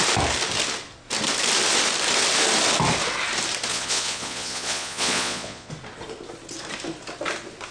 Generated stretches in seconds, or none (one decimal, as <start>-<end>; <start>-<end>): 3.7-5.7